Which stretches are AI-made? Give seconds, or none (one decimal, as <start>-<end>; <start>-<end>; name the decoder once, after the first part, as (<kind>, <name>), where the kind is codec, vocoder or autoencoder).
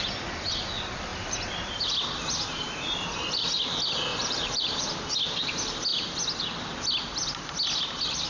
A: 1.1-1.9 (vocoder, BigVGAN v2); 4.1-4.8